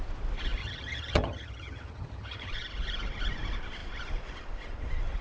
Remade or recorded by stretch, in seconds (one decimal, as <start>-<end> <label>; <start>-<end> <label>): 0.0-0.6 recorded; 0.6-2.5 remade; 2.5-5.2 recorded